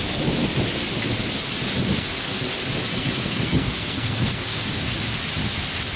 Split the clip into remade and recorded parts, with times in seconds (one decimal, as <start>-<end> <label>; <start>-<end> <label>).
0.0-1.9 recorded; 1.9-2.4 remade; 2.4-2.9 recorded; 2.9-4.7 remade; 4.7-6.0 recorded